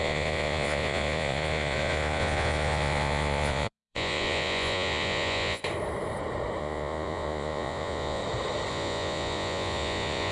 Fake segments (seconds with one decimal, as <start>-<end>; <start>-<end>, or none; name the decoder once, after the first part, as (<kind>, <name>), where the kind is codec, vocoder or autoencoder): 0.0-5.6 (vocoder, Vocos); 6.6-8.2; 8.7-10.3